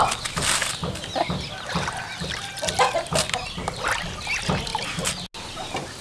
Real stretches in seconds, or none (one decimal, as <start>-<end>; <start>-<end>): 0.0-6.0